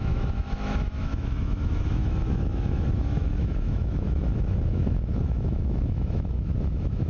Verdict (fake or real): fake